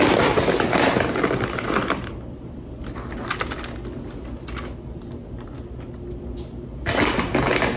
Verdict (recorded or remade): recorded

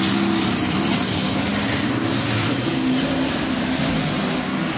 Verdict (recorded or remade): recorded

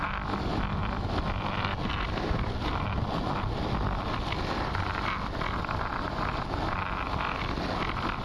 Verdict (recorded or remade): recorded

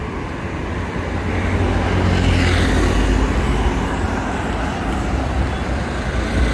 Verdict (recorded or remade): recorded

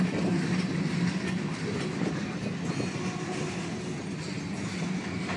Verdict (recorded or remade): recorded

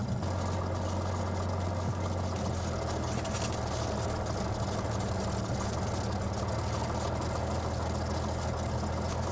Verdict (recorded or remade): recorded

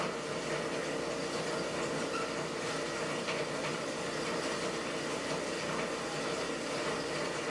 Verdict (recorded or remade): recorded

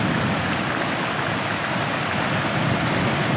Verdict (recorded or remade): recorded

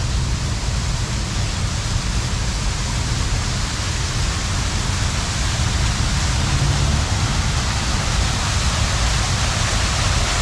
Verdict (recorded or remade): recorded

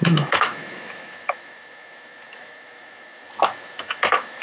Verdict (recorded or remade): remade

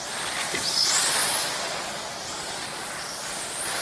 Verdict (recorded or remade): recorded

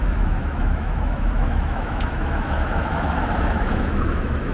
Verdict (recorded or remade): remade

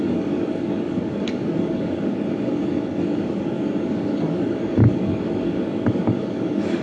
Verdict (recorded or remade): remade